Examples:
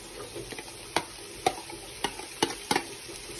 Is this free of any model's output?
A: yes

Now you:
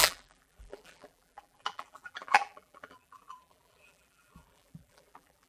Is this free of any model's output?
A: no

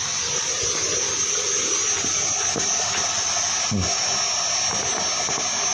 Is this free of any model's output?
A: yes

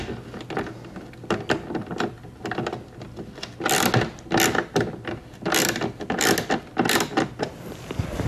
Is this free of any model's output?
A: yes